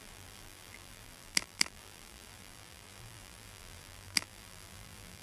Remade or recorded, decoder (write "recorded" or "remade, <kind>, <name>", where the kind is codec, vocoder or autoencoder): remade, vocoder, BigVGAN v2